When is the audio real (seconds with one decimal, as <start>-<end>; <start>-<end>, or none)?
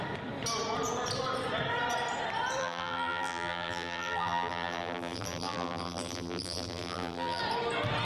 0.0-2.6; 7.4-8.0